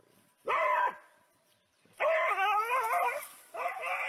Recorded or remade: recorded